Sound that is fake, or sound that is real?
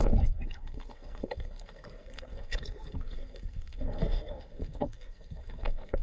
fake